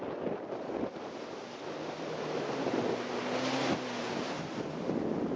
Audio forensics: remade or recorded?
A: recorded